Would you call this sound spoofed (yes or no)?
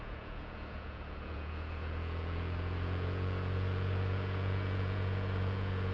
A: yes